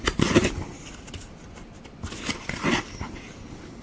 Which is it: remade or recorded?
recorded